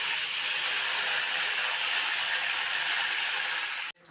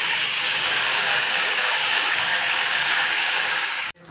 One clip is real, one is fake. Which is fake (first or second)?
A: second